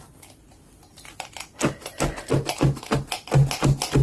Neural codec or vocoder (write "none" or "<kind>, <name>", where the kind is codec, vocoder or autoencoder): none